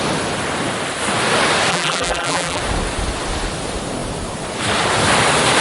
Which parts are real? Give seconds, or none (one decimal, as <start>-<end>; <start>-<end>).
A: 0.0-1.7; 2.6-5.6